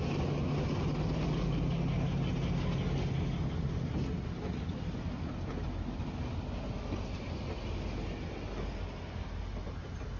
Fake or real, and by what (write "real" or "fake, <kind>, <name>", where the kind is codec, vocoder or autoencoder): real